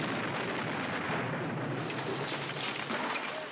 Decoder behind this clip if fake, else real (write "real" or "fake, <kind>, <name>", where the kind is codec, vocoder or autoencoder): fake, vocoder, BigVGAN v2